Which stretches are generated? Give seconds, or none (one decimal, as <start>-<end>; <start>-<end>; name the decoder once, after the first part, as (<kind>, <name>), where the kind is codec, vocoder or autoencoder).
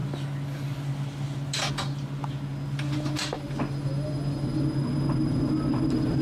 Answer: none